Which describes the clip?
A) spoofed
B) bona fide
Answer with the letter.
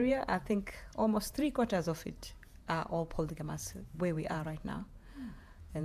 A